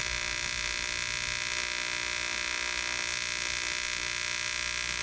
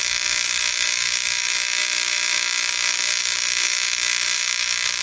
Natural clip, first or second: first